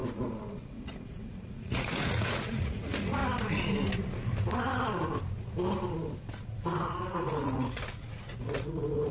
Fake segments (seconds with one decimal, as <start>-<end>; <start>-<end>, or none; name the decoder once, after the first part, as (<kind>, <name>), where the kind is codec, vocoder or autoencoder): 0.0-3.2 (vocoder, Vocos); 6.8-9.1